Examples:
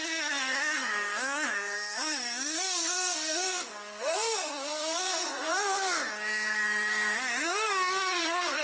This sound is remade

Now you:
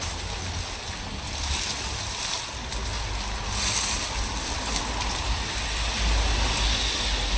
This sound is recorded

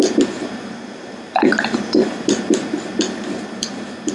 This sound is remade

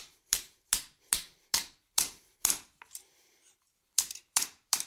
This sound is remade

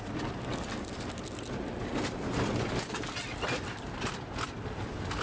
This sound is recorded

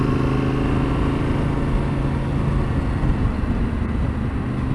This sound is recorded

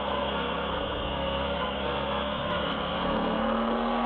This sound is remade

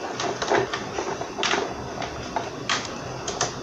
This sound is recorded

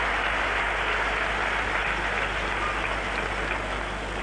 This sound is recorded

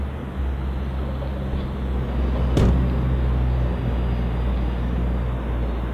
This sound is recorded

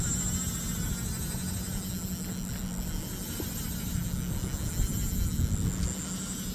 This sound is recorded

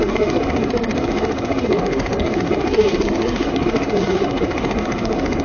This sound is remade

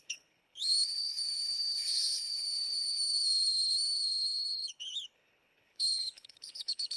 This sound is remade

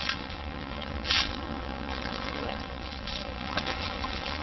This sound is remade